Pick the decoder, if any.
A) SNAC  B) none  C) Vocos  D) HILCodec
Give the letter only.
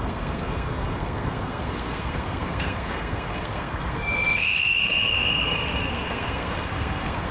A